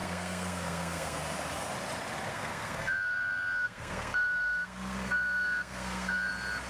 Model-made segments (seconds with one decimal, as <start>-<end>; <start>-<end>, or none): 0.0-1.2; 2.3-6.3